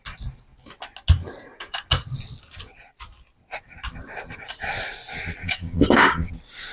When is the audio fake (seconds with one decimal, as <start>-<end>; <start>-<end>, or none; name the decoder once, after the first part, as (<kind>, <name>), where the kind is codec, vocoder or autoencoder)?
5.4-6.3 (codec, DAC)

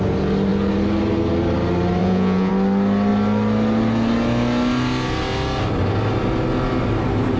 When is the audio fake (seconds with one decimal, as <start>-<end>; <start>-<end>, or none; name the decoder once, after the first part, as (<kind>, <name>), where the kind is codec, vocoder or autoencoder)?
2.0-2.5 (vocoder, Vocos)

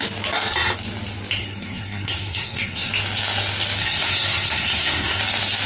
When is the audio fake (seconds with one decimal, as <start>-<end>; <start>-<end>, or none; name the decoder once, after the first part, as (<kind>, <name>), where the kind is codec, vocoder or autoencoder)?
1.4-2.9 (codec, SNAC); 3.8-5.2

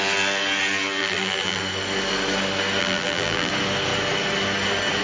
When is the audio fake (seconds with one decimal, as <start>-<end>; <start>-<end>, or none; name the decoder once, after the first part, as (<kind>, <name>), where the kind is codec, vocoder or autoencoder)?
1.0-1.6 (vocoder, BigVGAN v2); 2.8-3.5